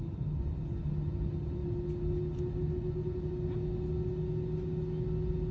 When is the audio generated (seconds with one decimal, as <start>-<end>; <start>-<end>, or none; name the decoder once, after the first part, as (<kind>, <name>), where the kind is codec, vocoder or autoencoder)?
none